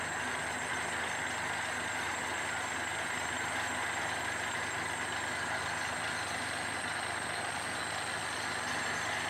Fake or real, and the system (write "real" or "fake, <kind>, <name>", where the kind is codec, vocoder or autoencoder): real